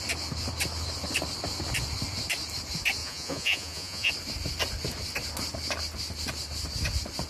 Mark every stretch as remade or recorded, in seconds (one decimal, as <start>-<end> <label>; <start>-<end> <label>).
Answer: 0.0-3.0 recorded; 3.0-4.1 remade; 4.1-7.3 recorded